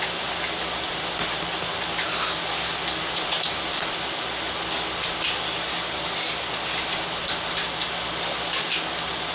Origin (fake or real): real